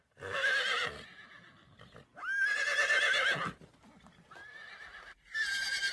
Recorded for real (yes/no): yes